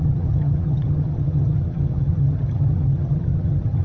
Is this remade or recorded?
remade